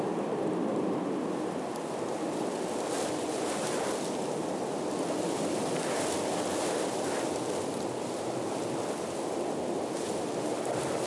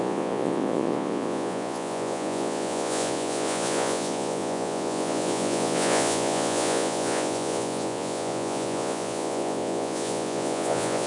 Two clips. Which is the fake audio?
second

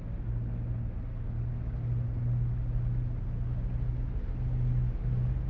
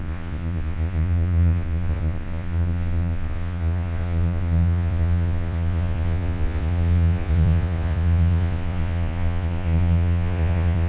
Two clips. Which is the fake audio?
second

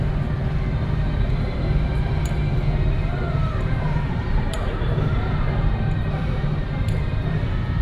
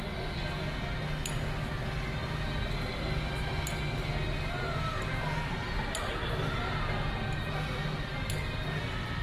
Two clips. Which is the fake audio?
first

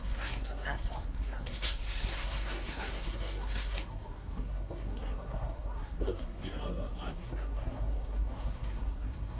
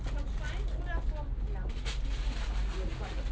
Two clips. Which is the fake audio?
first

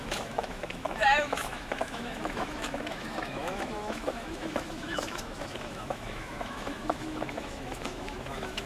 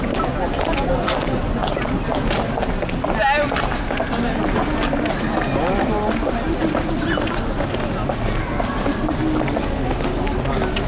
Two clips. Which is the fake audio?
first